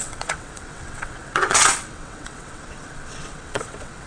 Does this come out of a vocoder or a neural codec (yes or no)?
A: yes